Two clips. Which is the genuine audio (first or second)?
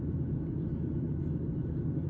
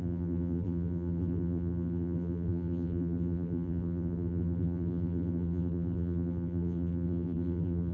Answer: first